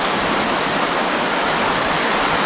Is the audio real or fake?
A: real